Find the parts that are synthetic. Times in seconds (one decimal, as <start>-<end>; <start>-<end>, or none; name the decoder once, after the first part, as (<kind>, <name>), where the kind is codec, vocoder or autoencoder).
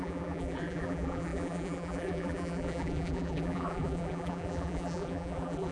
0.0-5.7 (vocoder, BigVGAN v2)